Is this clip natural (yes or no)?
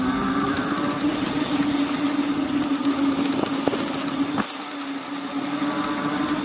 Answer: yes